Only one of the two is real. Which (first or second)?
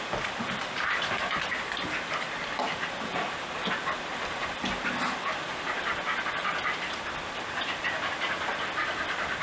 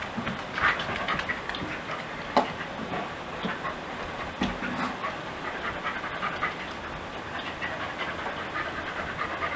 second